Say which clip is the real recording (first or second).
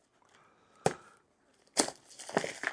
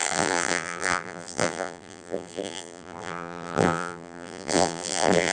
first